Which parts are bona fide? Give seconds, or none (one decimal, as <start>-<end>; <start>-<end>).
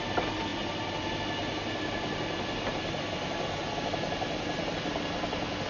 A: 0.0-5.7